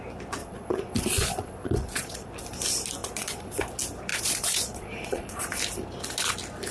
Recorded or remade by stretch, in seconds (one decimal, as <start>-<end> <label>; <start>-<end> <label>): 0.0-0.4 recorded; 0.4-2.3 remade; 2.3-3.0 recorded; 3.0-3.6 remade; 3.6-4.1 recorded; 4.1-5.6 remade; 5.6-6.7 recorded

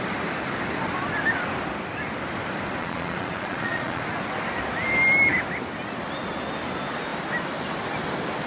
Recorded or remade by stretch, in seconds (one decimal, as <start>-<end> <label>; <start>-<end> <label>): 0.0-2.8 recorded; 2.8-4.0 remade; 4.0-8.5 recorded

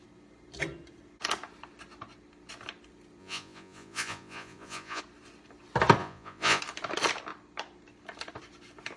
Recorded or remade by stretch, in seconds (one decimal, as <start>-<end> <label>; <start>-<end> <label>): 0.0-3.2 recorded; 3.2-5.0 remade; 5.0-6.0 recorded; 6.0-6.6 remade; 6.6-9.0 recorded

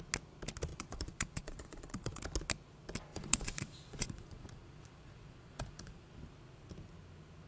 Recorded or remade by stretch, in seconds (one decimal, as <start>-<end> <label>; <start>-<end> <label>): 0.0-0.7 recorded; 0.7-2.2 remade; 2.2-3.1 recorded; 3.1-6.1 remade; 6.1-7.5 recorded

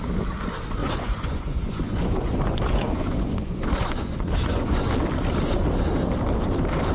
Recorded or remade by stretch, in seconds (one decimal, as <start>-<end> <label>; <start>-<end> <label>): 0.0-0.8 recorded; 0.8-4.9 remade; 4.9-6.9 recorded

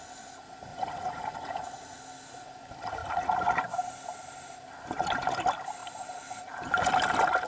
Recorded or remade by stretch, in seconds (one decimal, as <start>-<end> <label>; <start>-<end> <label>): 0.0-0.7 recorded; 0.7-2.0 remade; 2.0-3.0 recorded; 3.0-3.6 remade; 3.6-7.5 recorded

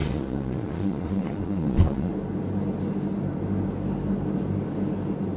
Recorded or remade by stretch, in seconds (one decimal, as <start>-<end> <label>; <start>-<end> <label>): 0.0-2.1 remade; 2.1-5.4 recorded

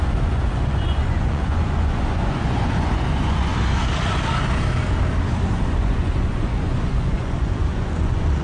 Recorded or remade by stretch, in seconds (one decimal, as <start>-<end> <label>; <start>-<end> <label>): 0.0-3.5 remade; 3.5-5.5 recorded; 5.5-8.4 remade